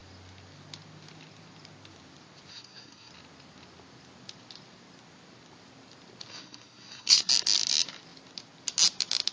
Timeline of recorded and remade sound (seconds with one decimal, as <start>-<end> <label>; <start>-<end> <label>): 0.0-2.5 recorded; 2.5-3.1 remade; 3.1-6.3 recorded; 6.3-7.3 remade; 7.3-9.3 recorded